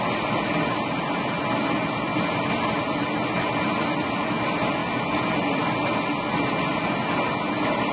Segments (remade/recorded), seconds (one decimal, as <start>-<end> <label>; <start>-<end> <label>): 0.0-7.9 recorded